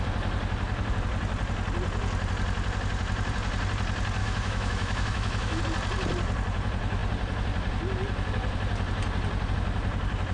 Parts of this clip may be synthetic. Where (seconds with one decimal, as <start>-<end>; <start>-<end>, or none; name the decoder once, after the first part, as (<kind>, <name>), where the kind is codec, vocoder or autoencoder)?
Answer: 4.2-5.6 (autoencoder, DAC-VAE)